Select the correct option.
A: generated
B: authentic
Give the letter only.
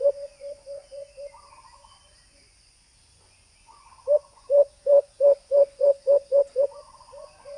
A